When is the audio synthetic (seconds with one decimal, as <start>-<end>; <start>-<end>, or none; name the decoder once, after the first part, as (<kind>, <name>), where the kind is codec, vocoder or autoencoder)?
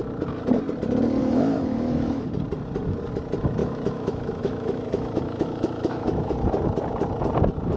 1.2-2.3 (autoencoder, DAC-VAE); 3.6-6.3